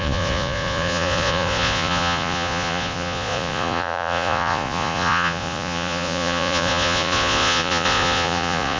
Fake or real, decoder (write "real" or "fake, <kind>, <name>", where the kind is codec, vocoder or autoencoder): fake, vocoder, Vocos